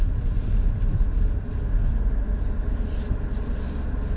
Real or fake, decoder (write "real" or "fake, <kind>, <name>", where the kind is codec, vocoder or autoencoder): real